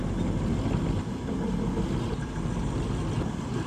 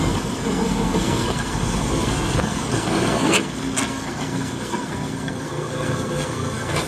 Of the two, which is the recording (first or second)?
first